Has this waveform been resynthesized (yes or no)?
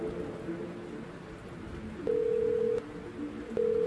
no